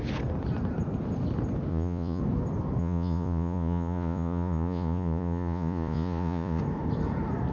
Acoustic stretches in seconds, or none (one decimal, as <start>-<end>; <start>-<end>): 0.0-1.7; 2.2-2.8; 6.6-7.5